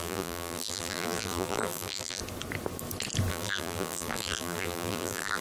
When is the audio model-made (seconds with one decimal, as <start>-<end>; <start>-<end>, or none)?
0.0-2.2; 3.3-5.4